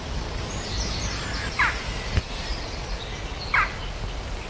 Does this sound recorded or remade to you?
recorded